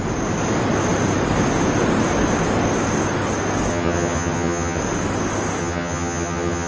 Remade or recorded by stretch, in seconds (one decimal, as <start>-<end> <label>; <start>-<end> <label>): 0.0-3.7 recorded; 3.7-4.8 remade; 4.8-5.6 recorded; 5.6-6.7 remade